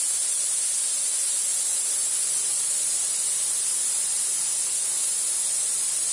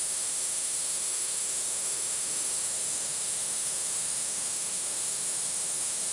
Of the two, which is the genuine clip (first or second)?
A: first